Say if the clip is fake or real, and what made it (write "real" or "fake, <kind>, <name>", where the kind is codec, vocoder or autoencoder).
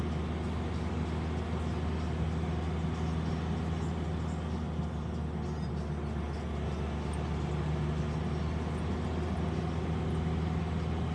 real